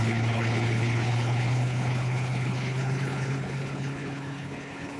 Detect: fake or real fake